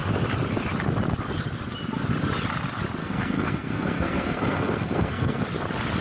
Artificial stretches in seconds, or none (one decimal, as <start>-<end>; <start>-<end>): 3.0-5.4